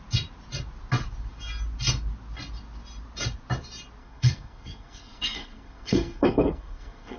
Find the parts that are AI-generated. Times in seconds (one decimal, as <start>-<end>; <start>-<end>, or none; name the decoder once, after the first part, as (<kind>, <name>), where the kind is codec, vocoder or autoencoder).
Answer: 4.0-7.2 (codec, SNAC)